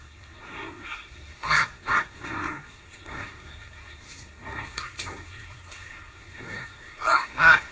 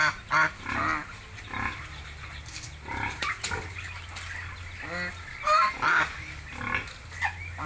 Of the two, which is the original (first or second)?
second